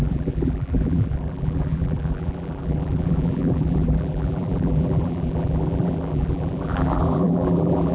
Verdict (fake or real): fake